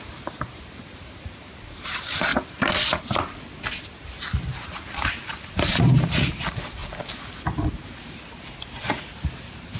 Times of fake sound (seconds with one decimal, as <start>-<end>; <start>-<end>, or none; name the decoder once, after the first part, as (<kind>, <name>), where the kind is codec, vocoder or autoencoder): 0.0-2.3 (vocoder, BigVGAN v2); 4.5-6.8; 7.7-9.8